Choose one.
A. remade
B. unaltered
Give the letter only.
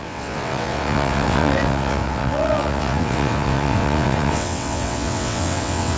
A